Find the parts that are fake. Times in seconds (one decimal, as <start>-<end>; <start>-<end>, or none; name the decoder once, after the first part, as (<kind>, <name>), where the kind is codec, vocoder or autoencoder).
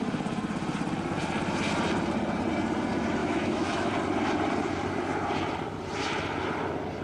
3.2-3.9 (autoencoder, DAC-VAE)